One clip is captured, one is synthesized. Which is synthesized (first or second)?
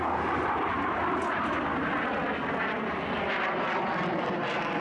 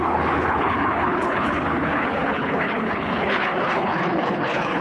second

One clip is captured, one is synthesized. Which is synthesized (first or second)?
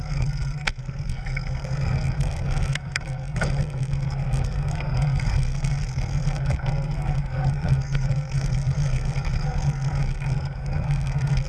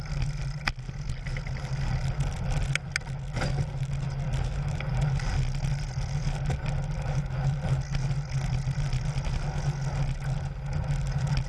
first